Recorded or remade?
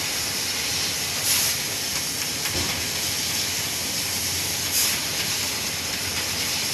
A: remade